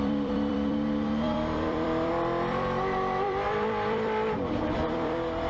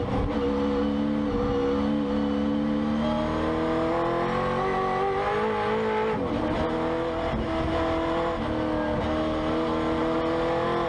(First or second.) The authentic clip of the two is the second